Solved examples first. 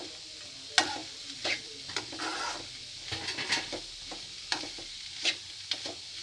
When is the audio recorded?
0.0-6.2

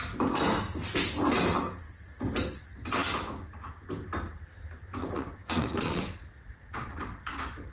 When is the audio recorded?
0.0-5.0

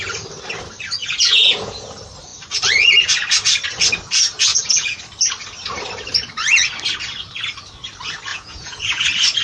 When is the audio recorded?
0.0-1.0; 1.8-4.5; 5.0-8.3; 9.0-9.4

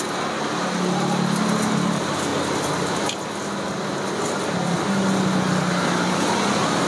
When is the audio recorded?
0.0-6.9

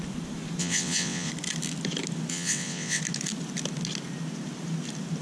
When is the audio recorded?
0.0-0.6; 1.3-2.3; 3.0-5.2

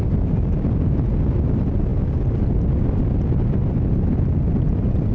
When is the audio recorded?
0.0-5.1

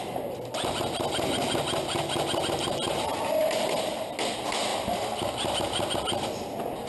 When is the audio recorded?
0.0-6.9